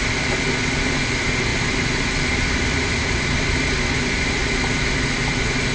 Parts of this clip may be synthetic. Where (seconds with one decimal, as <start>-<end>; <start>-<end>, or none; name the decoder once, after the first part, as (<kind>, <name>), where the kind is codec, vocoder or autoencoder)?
1.5-4.4 (vocoder, BigVGAN v2)